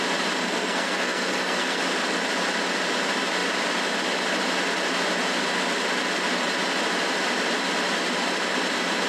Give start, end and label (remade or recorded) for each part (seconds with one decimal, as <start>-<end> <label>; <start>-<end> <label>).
0.0-0.4 recorded; 0.4-1.8 remade; 1.8-9.1 recorded